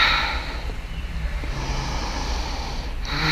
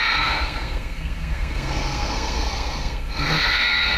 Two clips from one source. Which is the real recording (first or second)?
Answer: first